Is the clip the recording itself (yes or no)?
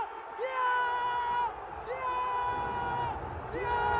yes